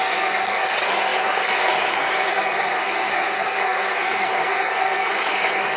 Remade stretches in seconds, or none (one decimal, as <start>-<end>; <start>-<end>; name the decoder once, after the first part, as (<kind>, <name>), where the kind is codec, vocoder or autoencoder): 0.0-5.8 (codec, SNAC)